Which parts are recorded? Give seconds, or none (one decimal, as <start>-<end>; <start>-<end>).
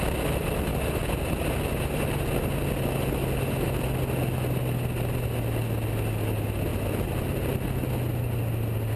0.0-9.0